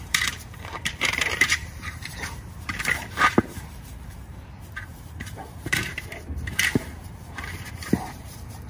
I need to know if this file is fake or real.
fake